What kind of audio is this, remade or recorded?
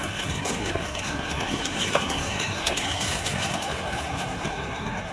remade